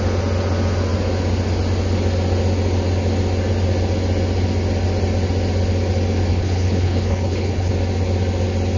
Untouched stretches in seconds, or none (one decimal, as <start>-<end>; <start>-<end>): 0.0-6.3; 7.7-8.8